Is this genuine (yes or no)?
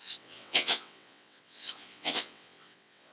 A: no